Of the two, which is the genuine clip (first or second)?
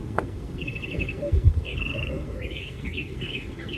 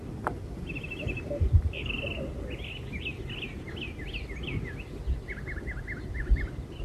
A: second